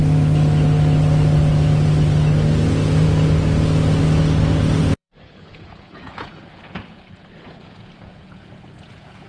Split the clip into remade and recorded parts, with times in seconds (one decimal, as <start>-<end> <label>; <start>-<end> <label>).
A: 0.0-4.8 recorded; 4.8-9.3 remade